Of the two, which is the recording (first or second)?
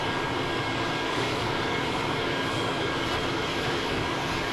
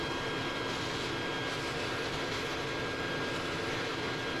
second